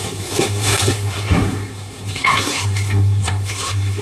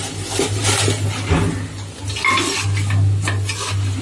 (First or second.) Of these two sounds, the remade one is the first